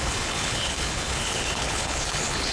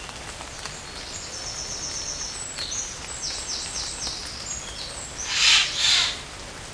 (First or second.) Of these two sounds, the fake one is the first